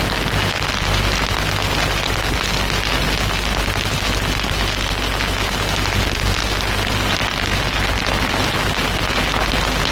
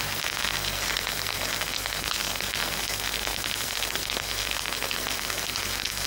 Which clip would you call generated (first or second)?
second